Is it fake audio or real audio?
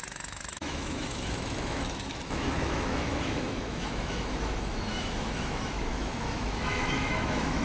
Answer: fake